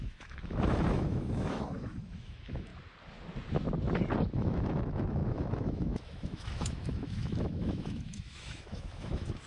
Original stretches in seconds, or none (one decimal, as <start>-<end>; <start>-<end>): 2.7-4.3